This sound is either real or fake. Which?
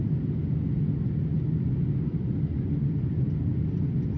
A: real